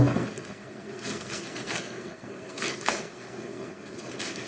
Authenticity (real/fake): fake